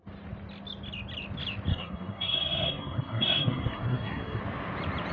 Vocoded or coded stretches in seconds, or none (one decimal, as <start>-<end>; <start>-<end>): 1.7-4.4